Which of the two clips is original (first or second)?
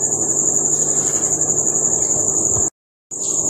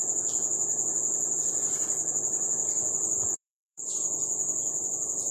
first